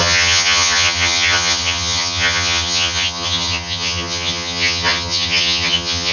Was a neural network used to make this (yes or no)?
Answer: yes